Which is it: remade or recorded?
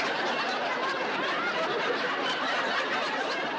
recorded